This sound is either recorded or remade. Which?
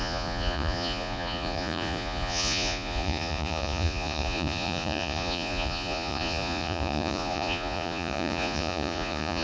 remade